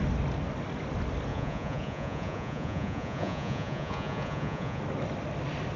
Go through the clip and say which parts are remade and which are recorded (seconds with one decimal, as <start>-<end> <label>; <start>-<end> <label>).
0.0-1.3 recorded; 1.3-4.8 remade; 4.8-5.8 recorded